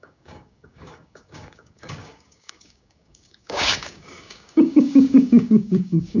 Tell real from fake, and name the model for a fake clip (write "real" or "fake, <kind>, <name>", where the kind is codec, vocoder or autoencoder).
fake, codec, DAC